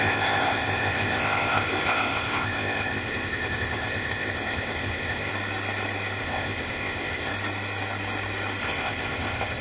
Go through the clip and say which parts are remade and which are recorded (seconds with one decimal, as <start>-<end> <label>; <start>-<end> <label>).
0.0-5.3 remade; 5.3-6.2 recorded; 6.2-7.3 remade; 7.3-8.6 recorded; 8.6-9.6 remade